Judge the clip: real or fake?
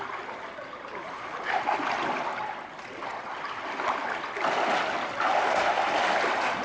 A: real